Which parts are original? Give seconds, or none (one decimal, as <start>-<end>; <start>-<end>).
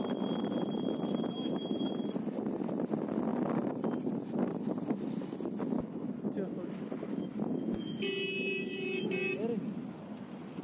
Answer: 0.0-10.6